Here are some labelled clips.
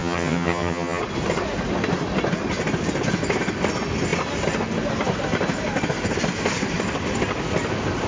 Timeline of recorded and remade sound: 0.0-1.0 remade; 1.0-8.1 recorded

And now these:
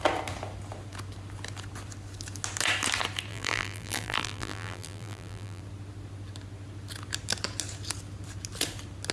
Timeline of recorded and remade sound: 0.0-3.3 recorded; 3.3-5.6 remade; 5.6-9.1 recorded